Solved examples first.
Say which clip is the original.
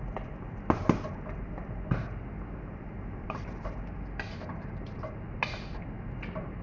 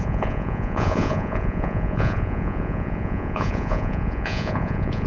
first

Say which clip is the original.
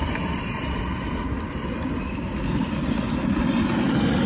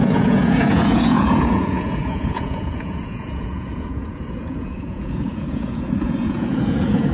first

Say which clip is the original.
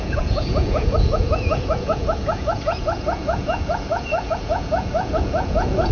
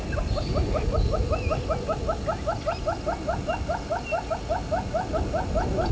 second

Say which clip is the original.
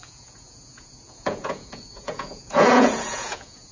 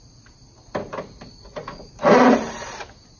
second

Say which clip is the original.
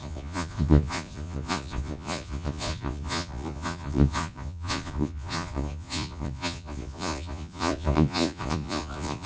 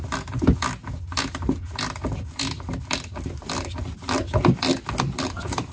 second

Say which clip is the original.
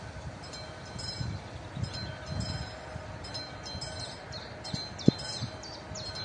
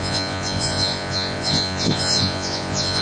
first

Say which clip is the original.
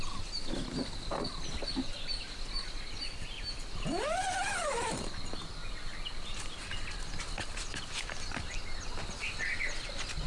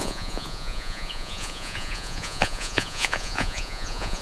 first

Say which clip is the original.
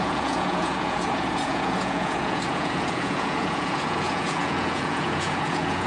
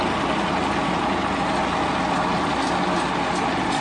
second